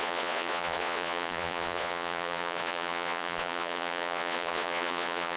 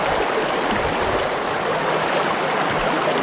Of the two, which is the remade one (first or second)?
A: first